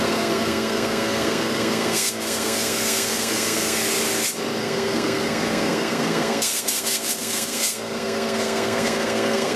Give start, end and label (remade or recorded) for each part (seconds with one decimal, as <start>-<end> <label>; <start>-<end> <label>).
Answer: 0.0-4.0 remade; 4.0-4.6 recorded; 4.6-9.6 remade